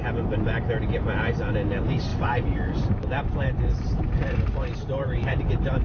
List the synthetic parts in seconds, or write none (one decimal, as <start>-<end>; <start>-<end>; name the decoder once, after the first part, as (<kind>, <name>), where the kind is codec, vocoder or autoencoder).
2.1-5.8 (vocoder, BigVGAN v2)